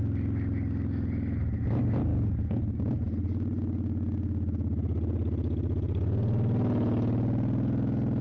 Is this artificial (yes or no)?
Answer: no